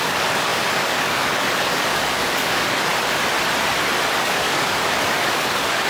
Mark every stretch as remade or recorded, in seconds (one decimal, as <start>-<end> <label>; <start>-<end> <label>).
0.0-2.9 remade; 2.9-4.2 recorded; 4.2-5.9 remade